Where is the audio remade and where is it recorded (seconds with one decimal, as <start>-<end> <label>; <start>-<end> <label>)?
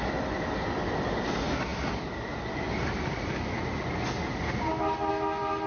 0.0-5.7 recorded